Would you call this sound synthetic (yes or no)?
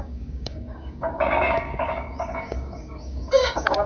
yes